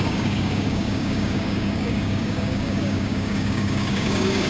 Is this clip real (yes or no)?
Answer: no